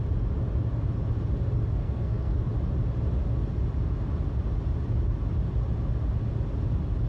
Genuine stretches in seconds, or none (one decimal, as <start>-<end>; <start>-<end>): 0.0-1.8; 2.5-7.1